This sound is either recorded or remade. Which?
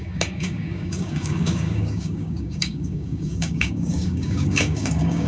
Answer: remade